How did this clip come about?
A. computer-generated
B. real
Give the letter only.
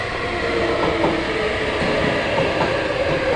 B